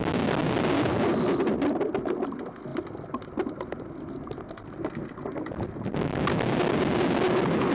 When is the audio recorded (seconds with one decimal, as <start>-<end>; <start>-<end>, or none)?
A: 0.0-7.7